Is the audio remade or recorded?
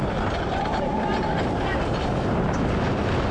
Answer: recorded